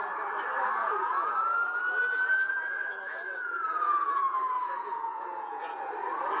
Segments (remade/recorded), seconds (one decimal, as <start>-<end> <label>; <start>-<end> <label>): 0.0-0.8 recorded; 0.8-1.8 remade; 1.8-2.5 recorded; 2.5-5.9 remade; 5.9-6.4 recorded